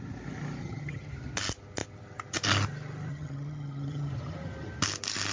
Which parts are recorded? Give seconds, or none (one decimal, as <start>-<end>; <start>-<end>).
0.0-0.6; 1.1-3.1; 4.1-5.3